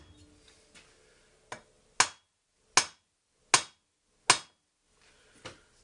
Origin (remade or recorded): recorded